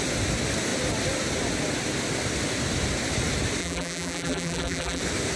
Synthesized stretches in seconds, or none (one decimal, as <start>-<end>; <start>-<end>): 3.6-5.0